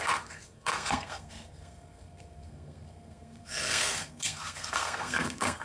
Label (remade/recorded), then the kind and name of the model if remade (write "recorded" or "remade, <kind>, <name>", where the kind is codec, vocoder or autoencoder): remade, codec, SNAC